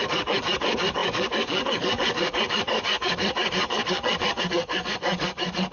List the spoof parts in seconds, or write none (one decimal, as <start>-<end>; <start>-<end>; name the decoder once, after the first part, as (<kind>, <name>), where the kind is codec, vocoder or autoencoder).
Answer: 0.0-5.7 (codec, DAC)